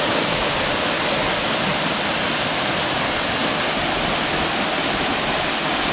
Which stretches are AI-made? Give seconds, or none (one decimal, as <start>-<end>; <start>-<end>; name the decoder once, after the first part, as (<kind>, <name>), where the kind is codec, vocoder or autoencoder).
none